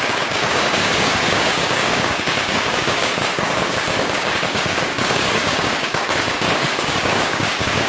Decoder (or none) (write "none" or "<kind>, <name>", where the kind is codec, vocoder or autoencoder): codec, DAC